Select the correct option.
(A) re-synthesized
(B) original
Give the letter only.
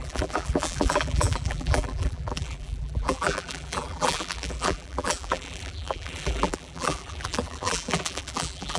A